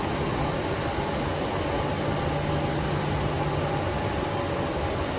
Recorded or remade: recorded